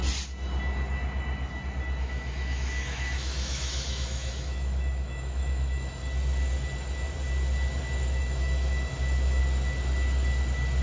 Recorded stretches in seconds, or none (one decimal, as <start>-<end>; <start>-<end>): 0.0-2.0; 6.0-8.2; 9.4-10.8